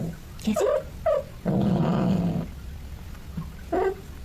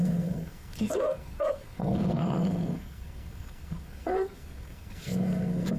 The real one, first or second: first